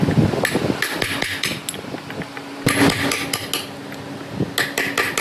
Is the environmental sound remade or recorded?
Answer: recorded